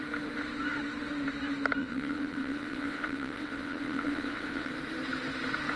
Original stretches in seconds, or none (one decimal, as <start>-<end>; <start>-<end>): 0.0-1.8; 4.7-5.8